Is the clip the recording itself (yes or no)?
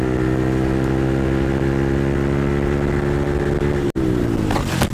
yes